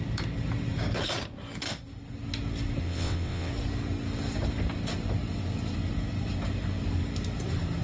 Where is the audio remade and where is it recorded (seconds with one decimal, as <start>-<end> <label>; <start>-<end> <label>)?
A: 0.0-2.8 recorded; 2.8-3.5 remade; 3.5-7.8 recorded